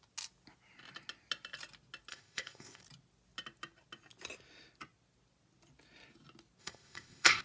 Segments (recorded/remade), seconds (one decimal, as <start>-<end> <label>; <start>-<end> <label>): 0.0-2.1 recorded; 2.1-2.8 remade; 2.8-6.6 recorded; 6.6-7.4 remade